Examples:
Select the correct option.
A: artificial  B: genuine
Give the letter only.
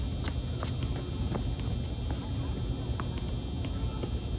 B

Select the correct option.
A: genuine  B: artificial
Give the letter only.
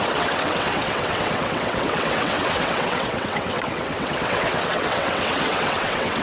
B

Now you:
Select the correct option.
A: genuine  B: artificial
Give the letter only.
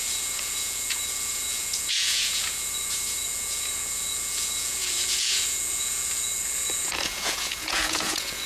B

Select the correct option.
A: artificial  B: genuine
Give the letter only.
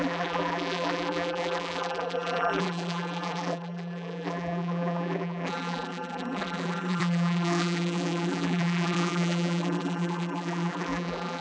A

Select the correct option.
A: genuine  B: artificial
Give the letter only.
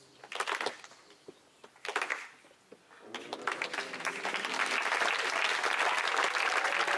A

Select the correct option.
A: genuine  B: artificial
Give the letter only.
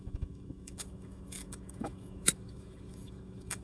B